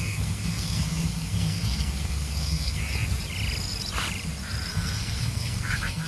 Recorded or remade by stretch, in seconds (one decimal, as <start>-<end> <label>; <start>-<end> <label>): 0.0-2.8 remade; 2.8-4.7 recorded; 4.7-6.1 remade